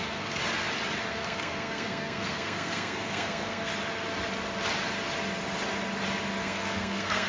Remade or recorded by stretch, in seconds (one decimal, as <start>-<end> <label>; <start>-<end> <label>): 0.0-0.4 remade; 0.4-1.1 recorded; 1.1-3.7 remade; 3.7-6.4 recorded; 6.4-7.3 remade